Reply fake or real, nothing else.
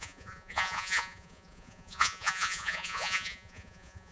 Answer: fake